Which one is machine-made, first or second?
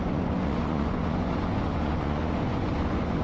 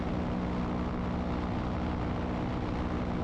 first